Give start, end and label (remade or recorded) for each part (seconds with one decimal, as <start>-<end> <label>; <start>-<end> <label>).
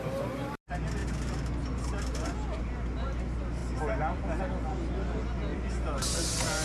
0.0-3.6 recorded; 3.6-4.4 remade; 4.4-5.5 recorded; 5.5-6.0 remade; 6.0-6.6 recorded